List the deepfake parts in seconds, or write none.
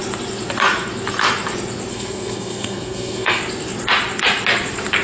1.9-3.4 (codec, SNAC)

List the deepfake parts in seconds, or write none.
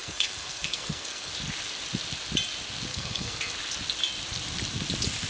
0.0-1.3 (codec, SNAC); 2.9-3.5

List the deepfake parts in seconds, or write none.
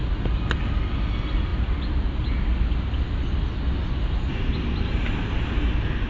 none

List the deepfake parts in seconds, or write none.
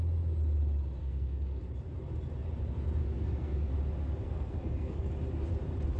1.0-1.6 (codec, SNAC); 3.0-3.7; 4.2-5.1